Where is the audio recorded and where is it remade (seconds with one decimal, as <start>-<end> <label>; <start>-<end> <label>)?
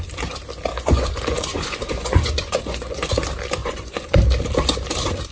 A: 0.0-0.7 recorded; 0.7-3.1 remade; 3.1-3.6 recorded; 3.6-4.2 remade; 4.2-5.3 recorded